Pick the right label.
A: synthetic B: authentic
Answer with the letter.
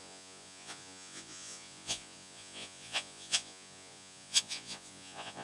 A